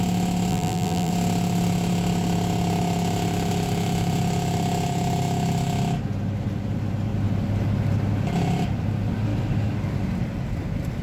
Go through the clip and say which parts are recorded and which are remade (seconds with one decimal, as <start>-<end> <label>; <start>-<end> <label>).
0.0-0.5 recorded; 0.5-1.1 remade; 1.1-11.0 recorded